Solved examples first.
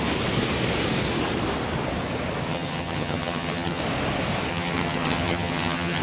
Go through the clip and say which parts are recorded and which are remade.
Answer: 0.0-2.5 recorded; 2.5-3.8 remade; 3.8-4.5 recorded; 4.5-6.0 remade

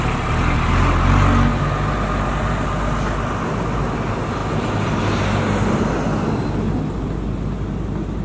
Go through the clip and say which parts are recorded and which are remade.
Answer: 0.0-8.2 recorded